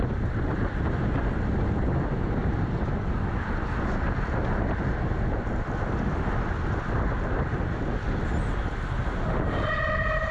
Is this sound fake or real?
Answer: real